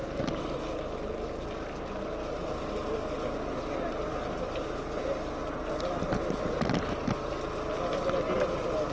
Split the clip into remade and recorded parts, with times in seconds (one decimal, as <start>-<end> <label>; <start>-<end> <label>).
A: 0.0-8.9 recorded

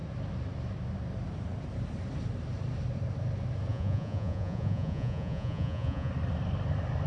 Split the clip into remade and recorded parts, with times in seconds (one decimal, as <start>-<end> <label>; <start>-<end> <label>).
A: 0.0-3.7 recorded; 3.7-6.1 remade; 6.1-7.1 recorded

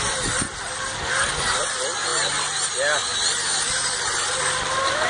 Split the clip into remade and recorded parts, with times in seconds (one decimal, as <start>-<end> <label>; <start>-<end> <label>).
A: 0.0-5.1 recorded